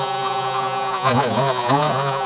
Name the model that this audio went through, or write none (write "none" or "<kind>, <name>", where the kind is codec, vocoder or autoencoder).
vocoder, Vocos